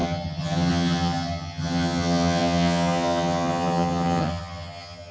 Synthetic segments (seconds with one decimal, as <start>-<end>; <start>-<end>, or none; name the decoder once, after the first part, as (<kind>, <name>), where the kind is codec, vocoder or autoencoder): 0.0-5.1 (vocoder, HiFi-GAN)